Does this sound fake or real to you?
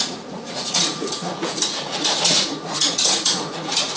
fake